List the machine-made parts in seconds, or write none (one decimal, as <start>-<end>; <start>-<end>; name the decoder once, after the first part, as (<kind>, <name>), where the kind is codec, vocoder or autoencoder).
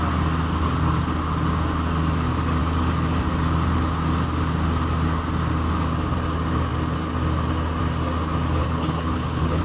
8.6-9.6 (codec, HILCodec)